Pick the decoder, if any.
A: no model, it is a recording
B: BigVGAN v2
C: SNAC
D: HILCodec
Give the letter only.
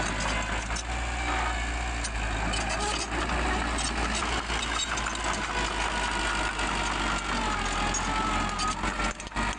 A